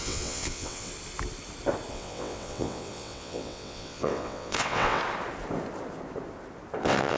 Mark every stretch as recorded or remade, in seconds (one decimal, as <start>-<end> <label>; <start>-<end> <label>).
0.0-0.9 remade; 0.9-1.9 recorded; 1.9-5.0 remade; 5.0-6.8 recorded; 6.8-7.2 remade